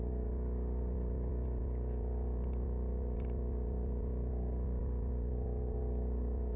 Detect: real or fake real